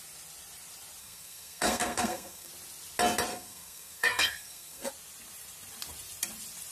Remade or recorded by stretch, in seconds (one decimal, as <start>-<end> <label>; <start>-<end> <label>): 0.0-1.0 recorded; 1.0-2.5 remade; 2.5-3.3 recorded; 3.3-4.9 remade; 4.9-6.7 recorded